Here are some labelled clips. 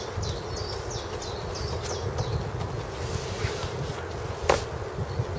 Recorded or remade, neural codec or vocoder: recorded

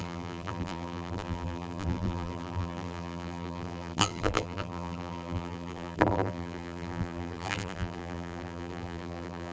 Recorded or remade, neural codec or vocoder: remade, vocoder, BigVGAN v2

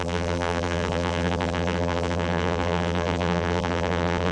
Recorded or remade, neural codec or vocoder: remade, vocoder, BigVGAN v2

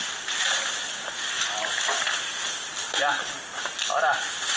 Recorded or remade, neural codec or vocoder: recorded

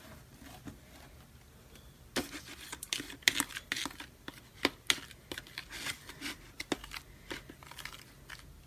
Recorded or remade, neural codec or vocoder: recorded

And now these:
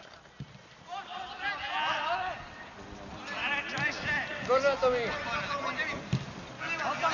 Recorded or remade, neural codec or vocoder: recorded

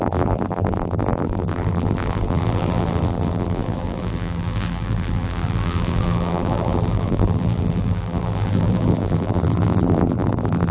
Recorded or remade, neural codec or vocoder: remade, vocoder, BigVGAN v2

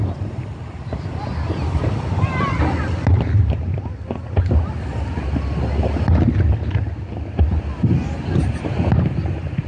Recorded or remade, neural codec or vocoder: recorded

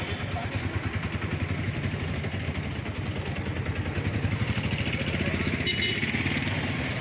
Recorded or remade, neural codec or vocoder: recorded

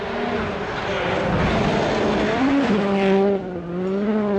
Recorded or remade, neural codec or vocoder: recorded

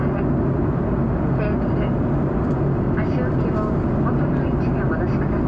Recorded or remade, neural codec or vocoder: recorded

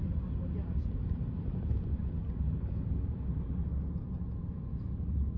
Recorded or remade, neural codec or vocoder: recorded